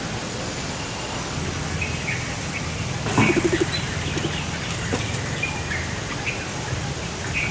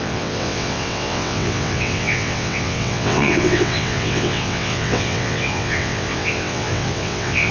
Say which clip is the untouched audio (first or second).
first